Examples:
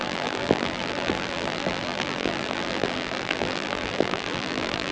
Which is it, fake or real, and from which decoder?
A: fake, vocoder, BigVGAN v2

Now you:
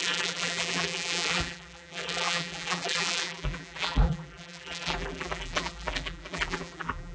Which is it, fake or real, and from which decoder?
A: fake, vocoder, BigVGAN v2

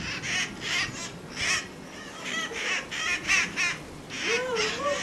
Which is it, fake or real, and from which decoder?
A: real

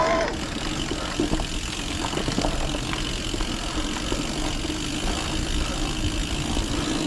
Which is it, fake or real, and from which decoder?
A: real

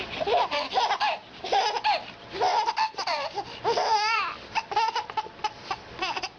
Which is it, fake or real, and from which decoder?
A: fake, vocoder, BigVGAN v2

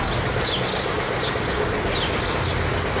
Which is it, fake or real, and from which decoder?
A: real